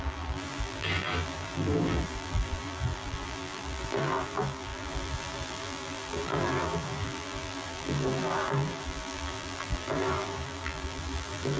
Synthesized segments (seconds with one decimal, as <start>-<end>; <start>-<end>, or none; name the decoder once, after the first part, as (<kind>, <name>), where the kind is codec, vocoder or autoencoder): 0.0-11.6 (vocoder, BigVGAN v2)